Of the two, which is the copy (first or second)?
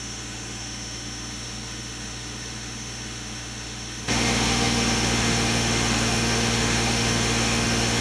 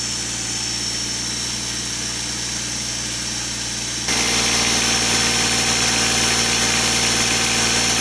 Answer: first